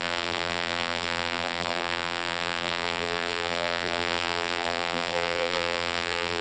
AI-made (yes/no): yes